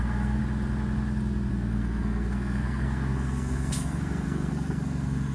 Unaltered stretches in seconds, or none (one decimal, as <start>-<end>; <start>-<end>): 0.4-1.5

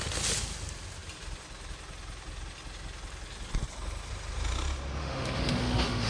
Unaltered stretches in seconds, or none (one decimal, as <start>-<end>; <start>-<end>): 0.0-5.0

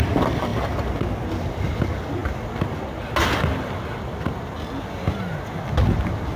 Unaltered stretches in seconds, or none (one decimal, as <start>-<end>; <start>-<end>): 0.0-6.4

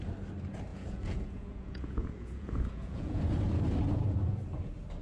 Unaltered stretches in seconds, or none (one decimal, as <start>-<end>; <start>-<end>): 0.0-0.7; 3.2-5.0

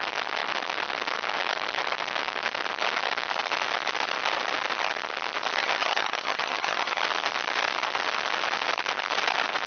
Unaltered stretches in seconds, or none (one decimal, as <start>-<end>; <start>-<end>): 0.0-5.6; 7.0-9.7